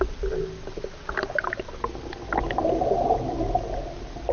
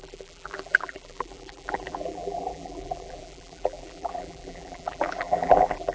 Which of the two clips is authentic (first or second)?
first